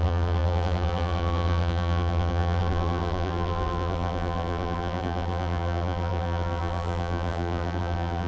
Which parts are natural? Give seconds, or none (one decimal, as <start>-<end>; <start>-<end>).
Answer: none

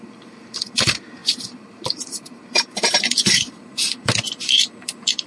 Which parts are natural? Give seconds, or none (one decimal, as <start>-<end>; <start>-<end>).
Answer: none

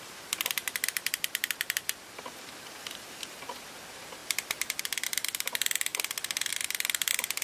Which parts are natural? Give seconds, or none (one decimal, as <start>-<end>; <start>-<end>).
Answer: 5.9-6.5

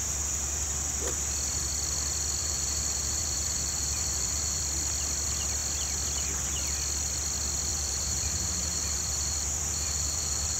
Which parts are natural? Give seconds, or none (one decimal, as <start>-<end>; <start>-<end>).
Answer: 0.0-2.4; 4.6-7.7

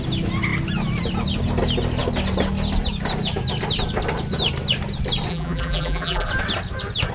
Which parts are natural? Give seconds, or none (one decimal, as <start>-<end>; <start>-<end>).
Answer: 0.0-5.3; 6.3-7.1

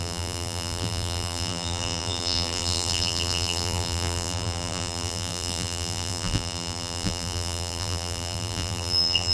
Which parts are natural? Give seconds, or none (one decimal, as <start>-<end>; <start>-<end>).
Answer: none

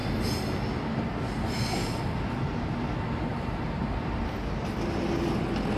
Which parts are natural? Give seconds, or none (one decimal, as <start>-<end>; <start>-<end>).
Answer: 0.0-3.3; 4.2-5.8